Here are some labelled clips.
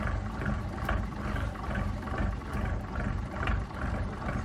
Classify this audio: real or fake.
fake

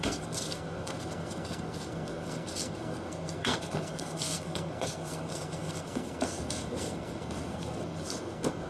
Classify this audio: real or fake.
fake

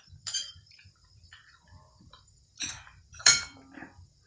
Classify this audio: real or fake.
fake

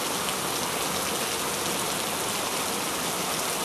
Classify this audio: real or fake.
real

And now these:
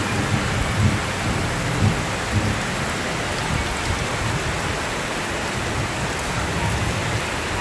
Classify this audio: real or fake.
real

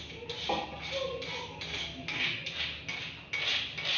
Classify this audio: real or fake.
real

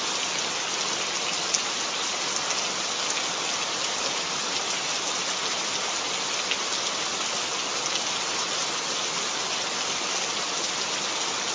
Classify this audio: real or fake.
real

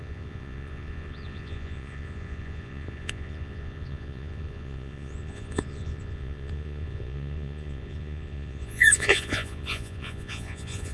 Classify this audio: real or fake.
fake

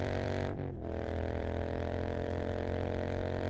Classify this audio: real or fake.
fake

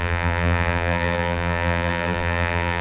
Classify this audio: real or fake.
fake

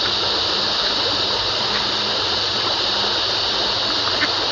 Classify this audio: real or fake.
fake